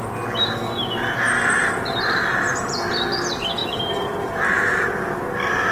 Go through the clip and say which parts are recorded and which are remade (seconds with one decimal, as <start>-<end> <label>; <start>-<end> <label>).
0.0-1.6 recorded; 1.6-2.4 remade; 2.4-3.6 recorded; 3.6-4.9 remade; 4.9-5.7 recorded